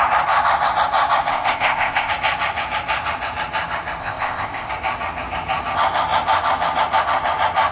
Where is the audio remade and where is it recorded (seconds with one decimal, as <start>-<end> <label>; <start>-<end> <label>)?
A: 0.0-1.3 recorded; 1.3-2.1 remade; 2.1-4.0 recorded; 4.0-4.7 remade; 4.7-7.7 recorded